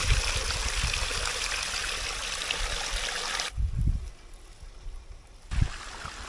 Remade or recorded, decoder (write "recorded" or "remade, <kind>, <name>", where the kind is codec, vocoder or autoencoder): recorded